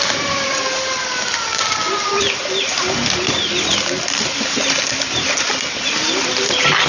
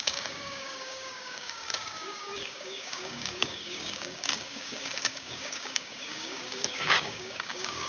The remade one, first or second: second